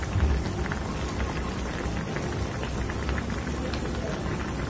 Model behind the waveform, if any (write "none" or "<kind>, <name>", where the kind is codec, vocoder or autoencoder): none